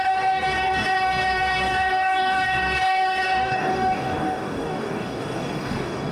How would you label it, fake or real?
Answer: fake